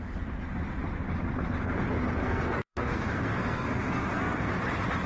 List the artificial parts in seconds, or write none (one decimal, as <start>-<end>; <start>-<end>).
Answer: 2.2-4.5